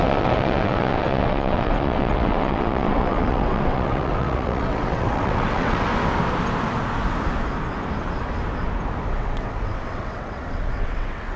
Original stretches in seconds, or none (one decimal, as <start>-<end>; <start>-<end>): 5.9-9.1